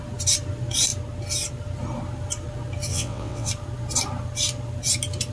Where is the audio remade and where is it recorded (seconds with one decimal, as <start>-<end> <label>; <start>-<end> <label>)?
0.0-2.9 recorded; 2.9-3.5 remade; 3.5-5.3 recorded